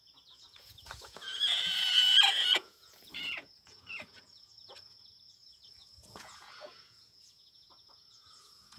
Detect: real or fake fake